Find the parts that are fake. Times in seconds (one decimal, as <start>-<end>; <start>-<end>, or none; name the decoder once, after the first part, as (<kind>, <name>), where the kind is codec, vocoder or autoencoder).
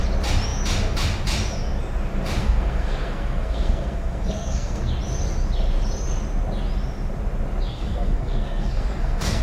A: 2.4-4.9 (codec, SNAC); 7.7-9.4